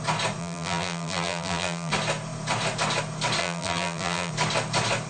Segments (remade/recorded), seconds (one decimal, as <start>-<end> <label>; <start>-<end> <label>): 0.0-0.4 recorded; 0.4-1.9 remade; 1.9-3.4 recorded; 3.4-4.3 remade; 4.3-5.1 recorded